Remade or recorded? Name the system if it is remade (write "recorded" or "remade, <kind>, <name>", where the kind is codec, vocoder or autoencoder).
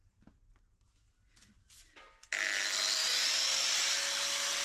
recorded